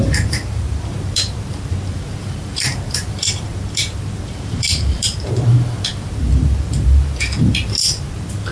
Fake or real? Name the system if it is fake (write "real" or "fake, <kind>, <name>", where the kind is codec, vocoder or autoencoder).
fake, vocoder, BigVGAN v2